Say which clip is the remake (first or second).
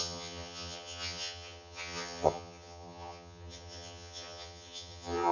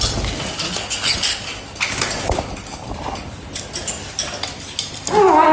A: first